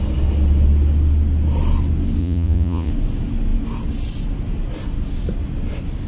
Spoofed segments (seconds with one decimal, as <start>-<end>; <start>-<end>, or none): 2.2-2.9